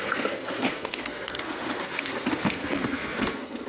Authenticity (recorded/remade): remade